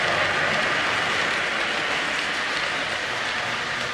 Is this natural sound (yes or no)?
yes